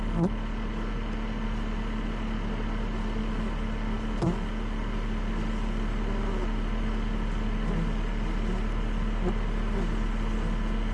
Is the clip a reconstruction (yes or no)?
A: no